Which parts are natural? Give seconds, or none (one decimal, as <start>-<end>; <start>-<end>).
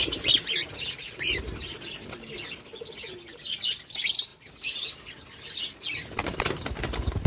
0.0-7.3